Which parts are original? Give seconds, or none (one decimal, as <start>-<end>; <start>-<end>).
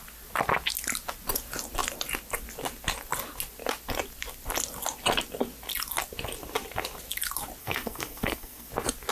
0.0-7.6; 8.7-9.1